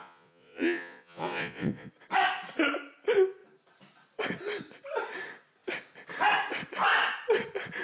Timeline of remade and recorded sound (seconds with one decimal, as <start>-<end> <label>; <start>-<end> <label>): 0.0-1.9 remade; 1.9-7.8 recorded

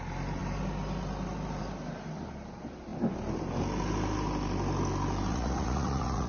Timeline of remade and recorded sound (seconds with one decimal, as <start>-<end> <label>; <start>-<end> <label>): 0.0-5.3 recorded; 5.3-6.3 remade

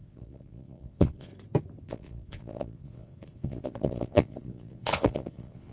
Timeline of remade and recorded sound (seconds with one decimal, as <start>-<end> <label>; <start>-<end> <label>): 0.0-1.3 remade; 1.3-1.9 recorded; 1.9-5.7 remade

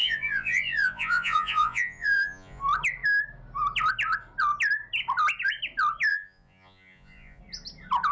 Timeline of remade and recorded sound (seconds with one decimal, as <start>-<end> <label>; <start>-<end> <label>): 0.0-2.6 remade; 2.6-6.1 recorded; 6.1-7.4 remade; 7.4-8.1 recorded

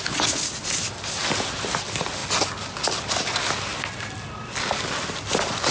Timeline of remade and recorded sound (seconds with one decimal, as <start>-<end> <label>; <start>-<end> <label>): 0.0-5.7 recorded

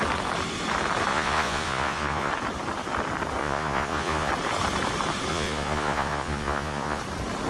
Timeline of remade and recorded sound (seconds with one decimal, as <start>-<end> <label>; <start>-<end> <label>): 0.0-1.1 recorded; 1.1-2.3 remade; 2.3-3.4 recorded; 3.4-4.3 remade; 4.3-5.3 recorded; 5.3-7.0 remade; 7.0-7.5 recorded

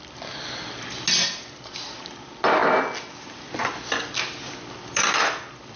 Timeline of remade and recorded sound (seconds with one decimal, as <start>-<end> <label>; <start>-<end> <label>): 0.0-5.8 recorded